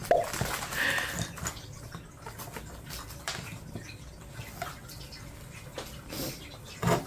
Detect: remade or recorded recorded